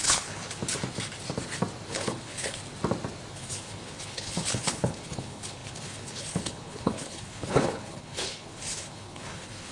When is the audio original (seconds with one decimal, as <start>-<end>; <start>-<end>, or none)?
0.6-1.9; 2.6-3.3